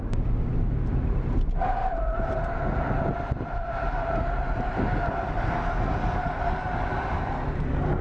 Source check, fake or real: real